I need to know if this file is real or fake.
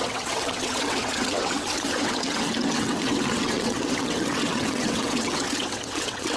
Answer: fake